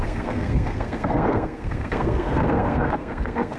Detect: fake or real fake